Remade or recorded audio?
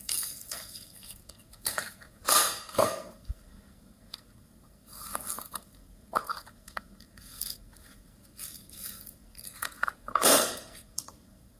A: remade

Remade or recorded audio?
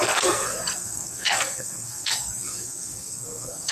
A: remade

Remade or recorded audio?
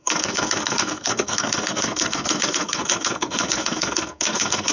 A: remade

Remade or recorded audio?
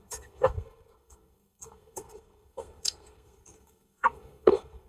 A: remade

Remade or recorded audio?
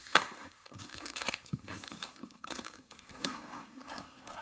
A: remade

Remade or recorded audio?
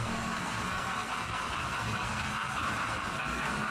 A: remade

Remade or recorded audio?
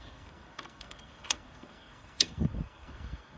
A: remade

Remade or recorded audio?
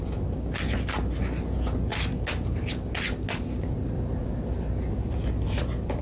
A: recorded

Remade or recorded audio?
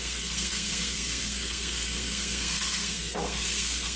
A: remade